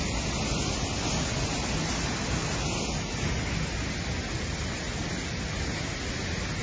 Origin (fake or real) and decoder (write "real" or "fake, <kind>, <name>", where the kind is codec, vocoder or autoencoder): real